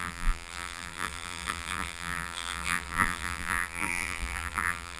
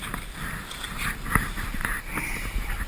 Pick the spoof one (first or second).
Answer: first